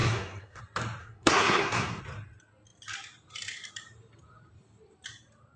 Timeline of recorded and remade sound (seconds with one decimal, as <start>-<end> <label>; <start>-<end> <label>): 0.0-0.6 remade; 0.6-1.0 recorded; 1.0-2.0 remade; 2.0-5.6 recorded